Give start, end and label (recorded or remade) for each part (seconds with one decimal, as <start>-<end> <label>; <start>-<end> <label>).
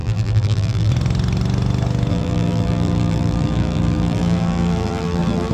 0.0-0.9 remade; 0.9-2.1 recorded; 2.1-5.5 remade